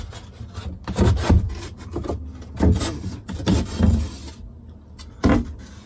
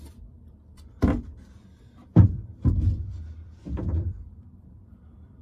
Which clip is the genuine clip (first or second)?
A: first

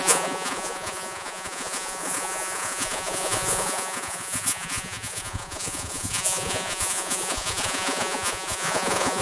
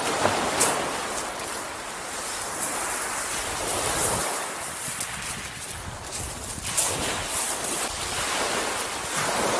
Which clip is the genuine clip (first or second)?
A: second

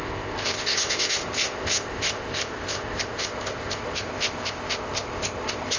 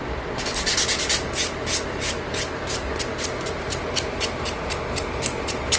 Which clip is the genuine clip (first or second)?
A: second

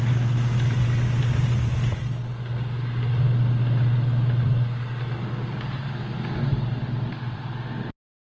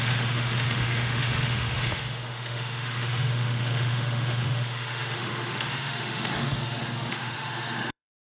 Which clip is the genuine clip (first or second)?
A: first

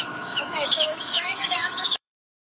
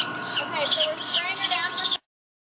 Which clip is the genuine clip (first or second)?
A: second